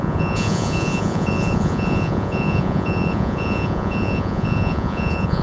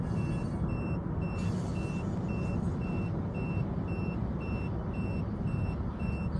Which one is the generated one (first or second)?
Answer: first